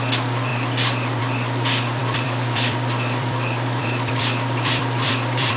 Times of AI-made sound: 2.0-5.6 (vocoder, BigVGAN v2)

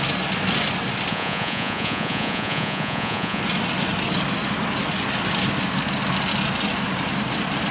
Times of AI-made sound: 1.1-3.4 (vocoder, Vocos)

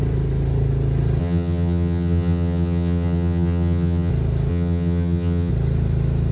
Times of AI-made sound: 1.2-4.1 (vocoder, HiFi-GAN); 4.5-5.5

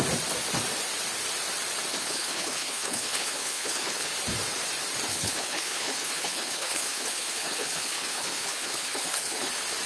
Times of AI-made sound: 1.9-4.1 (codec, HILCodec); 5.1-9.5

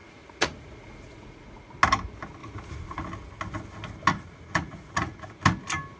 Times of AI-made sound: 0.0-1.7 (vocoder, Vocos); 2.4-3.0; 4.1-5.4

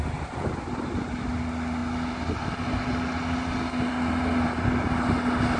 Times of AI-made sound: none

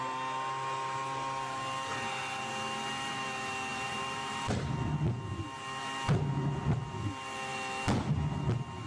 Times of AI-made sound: 3.7-4.5 (vocoder, BigVGAN v2)